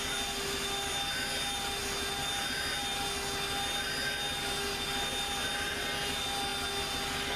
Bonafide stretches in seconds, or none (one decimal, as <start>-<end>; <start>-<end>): 0.0-7.4